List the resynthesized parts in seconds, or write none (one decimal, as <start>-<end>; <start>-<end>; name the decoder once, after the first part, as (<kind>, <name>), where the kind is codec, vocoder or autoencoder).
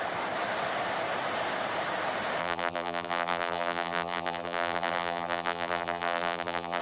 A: 2.4-6.8 (vocoder, BigVGAN v2)